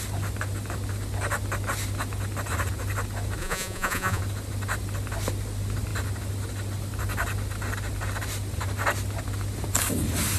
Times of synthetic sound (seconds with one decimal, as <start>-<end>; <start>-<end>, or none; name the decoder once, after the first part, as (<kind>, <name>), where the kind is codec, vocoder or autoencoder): 3.4-4.2 (vocoder, Vocos)